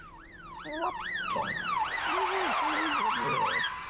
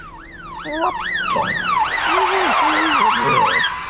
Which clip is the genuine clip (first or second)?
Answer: second